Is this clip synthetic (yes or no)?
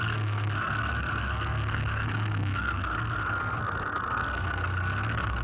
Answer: yes